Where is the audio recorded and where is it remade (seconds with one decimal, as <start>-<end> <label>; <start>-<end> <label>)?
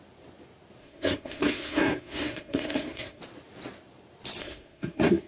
0.0-0.8 recorded; 0.8-3.2 remade; 3.2-4.4 recorded; 4.4-5.3 remade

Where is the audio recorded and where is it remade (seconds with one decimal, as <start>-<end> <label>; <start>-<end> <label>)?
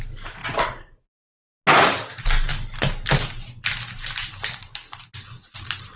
0.0-6.0 recorded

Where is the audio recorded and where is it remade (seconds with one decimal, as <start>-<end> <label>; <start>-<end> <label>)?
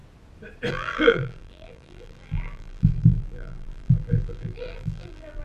0.0-0.7 recorded; 0.7-5.4 remade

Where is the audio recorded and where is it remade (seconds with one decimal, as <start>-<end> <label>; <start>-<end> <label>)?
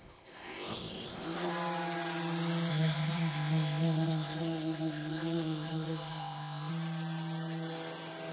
0.0-1.5 remade; 1.5-2.7 recorded; 2.7-6.7 remade; 6.7-8.3 recorded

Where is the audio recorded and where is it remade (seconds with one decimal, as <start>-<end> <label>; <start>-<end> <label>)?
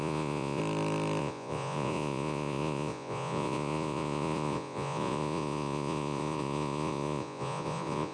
0.0-0.6 remade; 0.6-1.2 recorded; 1.2-8.1 remade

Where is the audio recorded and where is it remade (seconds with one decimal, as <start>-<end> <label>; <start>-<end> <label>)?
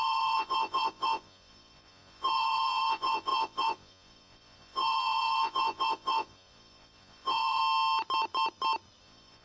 0.0-7.6 remade; 7.6-9.0 recorded; 9.0-9.4 remade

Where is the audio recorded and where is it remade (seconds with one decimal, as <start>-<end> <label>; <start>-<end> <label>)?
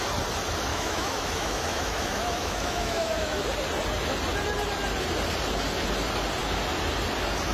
0.0-0.7 recorded; 0.7-3.4 remade; 3.4-7.5 recorded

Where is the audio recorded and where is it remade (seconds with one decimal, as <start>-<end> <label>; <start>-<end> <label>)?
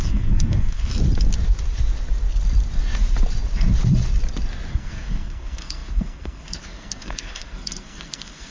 0.0-0.9 remade; 0.9-4.7 recorded; 4.7-8.5 remade